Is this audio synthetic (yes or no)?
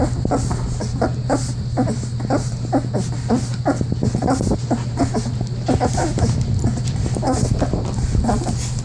no